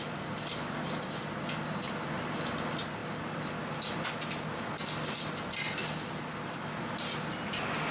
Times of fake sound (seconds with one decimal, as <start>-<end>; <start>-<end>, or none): none